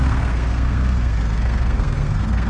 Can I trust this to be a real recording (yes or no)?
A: no